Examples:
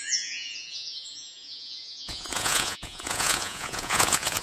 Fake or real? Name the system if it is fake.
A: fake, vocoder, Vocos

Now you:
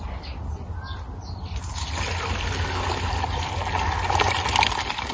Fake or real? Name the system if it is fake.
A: real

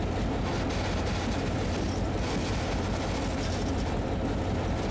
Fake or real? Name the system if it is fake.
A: real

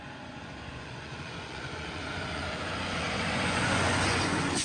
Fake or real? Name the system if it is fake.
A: fake, vocoder, Vocos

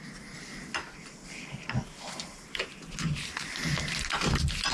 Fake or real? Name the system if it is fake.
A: real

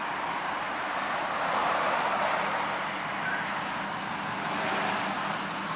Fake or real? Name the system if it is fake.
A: real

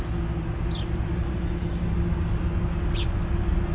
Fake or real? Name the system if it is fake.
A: real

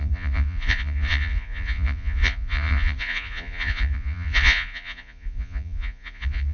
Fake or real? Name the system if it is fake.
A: fake, vocoder, Vocos